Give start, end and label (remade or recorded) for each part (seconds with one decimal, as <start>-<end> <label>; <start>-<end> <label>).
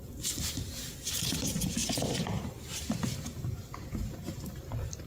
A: 0.0-5.1 recorded